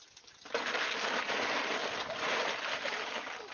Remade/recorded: recorded